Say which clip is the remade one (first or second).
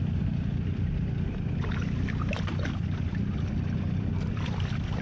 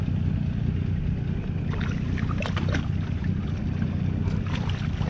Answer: first